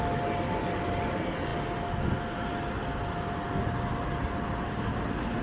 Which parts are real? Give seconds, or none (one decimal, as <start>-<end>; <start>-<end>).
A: 0.0-5.4